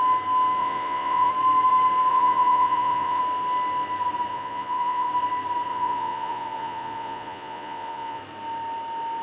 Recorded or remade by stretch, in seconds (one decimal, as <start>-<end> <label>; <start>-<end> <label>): 0.0-0.6 recorded; 0.6-1.3 remade; 1.3-2.1 recorded; 2.1-3.2 remade; 3.2-4.3 recorded; 4.3-5.1 remade; 5.1-5.7 recorded; 5.7-8.2 remade; 8.2-9.2 recorded